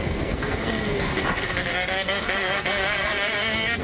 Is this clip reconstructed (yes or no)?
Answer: yes